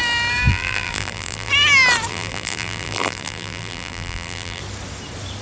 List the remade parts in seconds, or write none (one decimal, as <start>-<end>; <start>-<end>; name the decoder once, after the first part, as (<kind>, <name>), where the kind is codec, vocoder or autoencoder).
0.5-1.5 (vocoder, BigVGAN v2); 2.1-4.6